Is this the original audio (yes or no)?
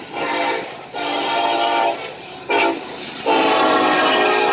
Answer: no